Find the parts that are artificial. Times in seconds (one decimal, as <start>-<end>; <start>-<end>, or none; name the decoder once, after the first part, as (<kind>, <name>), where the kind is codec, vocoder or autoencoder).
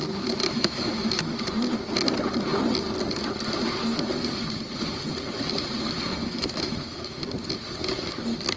0.4-1.5 (autoencoder, DAC-VAE); 6.2-7.2